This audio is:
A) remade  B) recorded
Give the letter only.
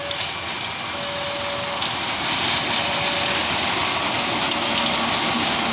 B